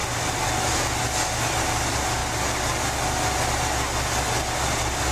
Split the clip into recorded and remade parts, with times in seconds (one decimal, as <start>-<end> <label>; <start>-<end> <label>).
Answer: 0.0-5.1 recorded